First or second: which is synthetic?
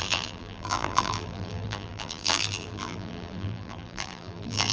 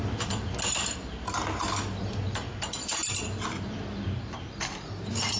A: first